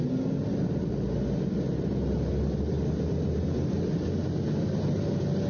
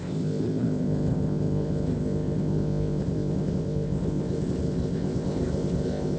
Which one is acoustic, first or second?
first